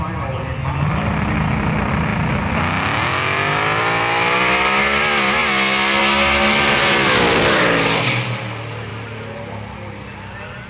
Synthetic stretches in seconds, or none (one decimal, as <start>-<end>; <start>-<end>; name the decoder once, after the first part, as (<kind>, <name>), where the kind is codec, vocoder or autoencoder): none